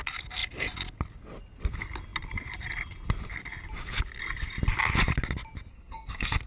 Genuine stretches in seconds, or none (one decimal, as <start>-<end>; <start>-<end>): 0.0-5.7